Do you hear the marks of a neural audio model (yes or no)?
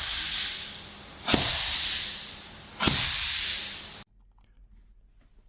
no